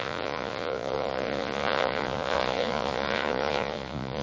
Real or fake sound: fake